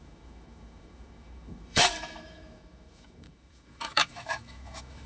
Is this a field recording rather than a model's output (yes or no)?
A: no